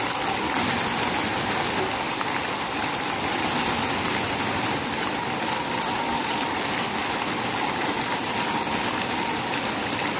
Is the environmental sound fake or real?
real